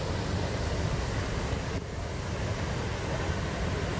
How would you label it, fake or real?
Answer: real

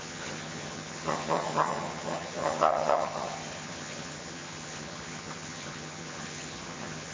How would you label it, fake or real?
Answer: fake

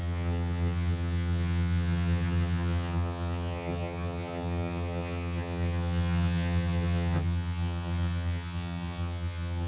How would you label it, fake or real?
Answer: fake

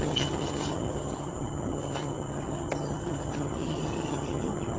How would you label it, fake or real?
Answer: fake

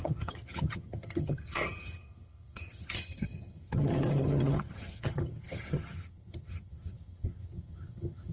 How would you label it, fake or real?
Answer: fake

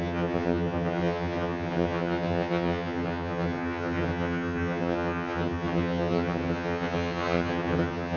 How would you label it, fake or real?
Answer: fake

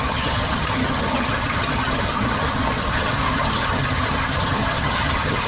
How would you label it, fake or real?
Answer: fake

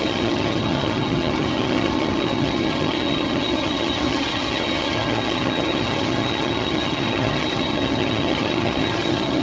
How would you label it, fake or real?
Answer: fake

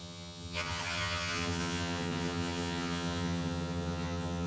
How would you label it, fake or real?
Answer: fake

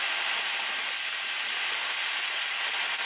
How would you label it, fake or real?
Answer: real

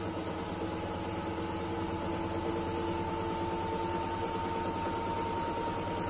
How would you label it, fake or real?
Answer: real